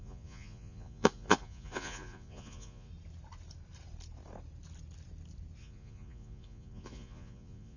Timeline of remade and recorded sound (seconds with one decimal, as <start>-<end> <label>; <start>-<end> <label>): 0.0-2.9 remade; 2.9-5.6 recorded; 5.6-7.8 remade

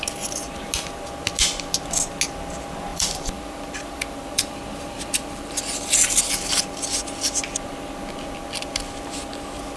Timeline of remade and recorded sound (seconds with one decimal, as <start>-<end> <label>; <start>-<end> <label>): 0.0-2.9 recorded; 2.9-6.3 remade; 6.3-9.8 recorded